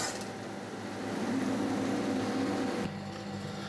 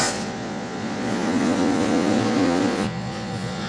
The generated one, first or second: second